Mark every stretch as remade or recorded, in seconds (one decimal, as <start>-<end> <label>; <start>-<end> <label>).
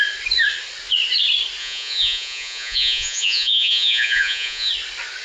0.0-1.6 recorded; 1.6-4.7 remade; 4.7-5.2 recorded